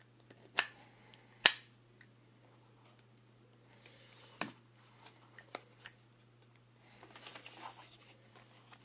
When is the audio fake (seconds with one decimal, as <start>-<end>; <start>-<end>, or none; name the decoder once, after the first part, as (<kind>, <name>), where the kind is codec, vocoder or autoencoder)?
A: none